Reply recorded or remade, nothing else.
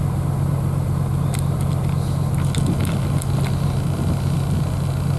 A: recorded